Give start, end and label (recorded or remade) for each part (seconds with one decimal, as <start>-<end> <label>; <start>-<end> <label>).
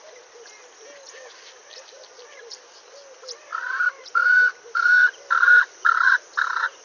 0.0-6.8 recorded